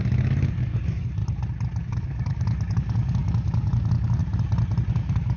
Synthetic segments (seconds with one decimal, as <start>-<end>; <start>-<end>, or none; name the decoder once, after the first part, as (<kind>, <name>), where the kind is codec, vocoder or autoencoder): 0.0-1.2 (codec, DAC); 1.9-4.2; 4.9-5.4